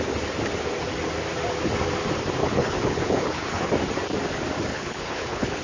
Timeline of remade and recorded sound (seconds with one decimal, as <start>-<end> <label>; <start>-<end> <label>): 0.0-2.4 recorded; 2.4-3.7 remade; 3.7-4.7 recorded; 4.7-5.6 remade